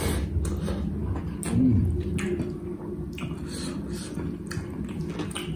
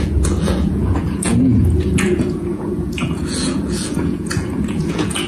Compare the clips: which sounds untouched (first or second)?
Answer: first